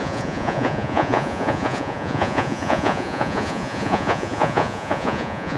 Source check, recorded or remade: remade